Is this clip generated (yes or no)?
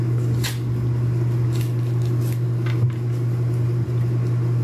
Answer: no